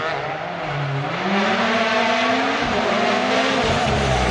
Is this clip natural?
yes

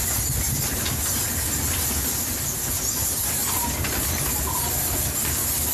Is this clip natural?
yes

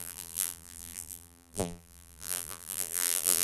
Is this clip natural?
no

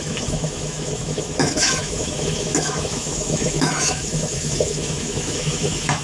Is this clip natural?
no